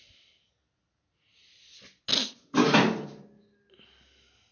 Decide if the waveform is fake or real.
real